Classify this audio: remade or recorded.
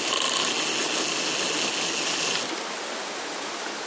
recorded